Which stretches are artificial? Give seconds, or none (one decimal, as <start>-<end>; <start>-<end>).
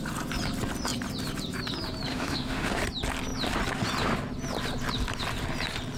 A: 2.1-2.8